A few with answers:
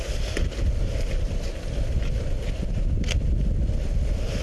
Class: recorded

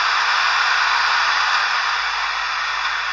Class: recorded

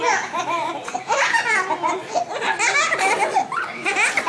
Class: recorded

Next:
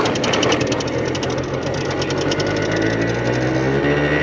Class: recorded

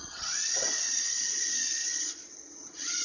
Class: remade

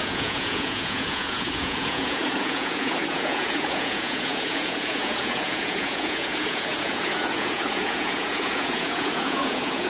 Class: remade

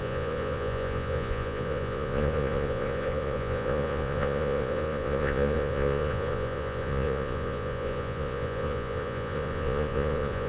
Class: remade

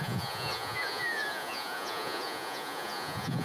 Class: remade